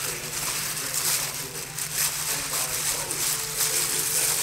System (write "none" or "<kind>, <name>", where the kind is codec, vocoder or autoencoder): none